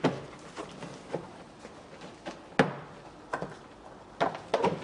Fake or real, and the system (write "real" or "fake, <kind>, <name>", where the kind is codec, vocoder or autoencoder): real